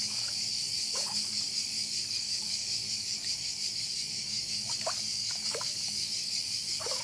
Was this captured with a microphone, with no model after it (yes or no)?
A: no